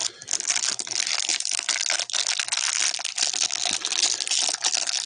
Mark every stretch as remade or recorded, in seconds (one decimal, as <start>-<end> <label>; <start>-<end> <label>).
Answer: 0.0-5.1 recorded